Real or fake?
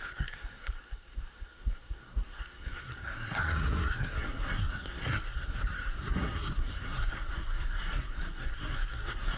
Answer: fake